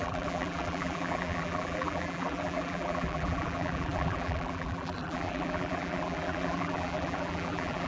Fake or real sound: fake